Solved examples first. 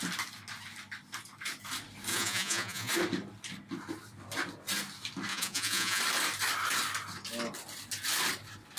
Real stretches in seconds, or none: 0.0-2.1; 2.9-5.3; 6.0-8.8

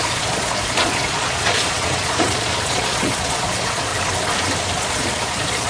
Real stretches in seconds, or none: 3.9-4.7

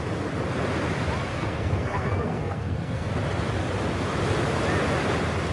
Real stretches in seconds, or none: 0.0-1.3; 3.1-5.5

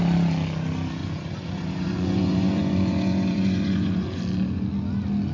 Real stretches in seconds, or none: 0.0-1.0; 4.2-5.3

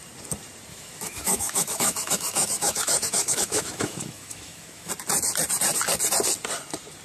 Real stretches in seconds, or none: 0.0-0.7; 4.9-7.0

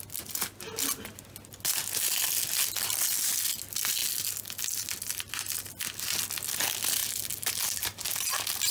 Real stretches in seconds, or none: 0.0-8.7